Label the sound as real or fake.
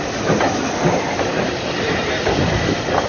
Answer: real